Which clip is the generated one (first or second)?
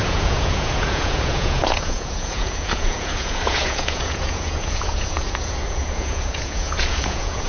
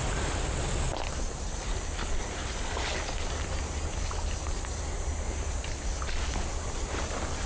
first